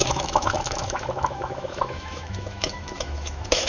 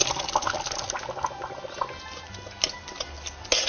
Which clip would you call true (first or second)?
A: second